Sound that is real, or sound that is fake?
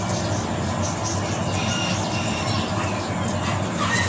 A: real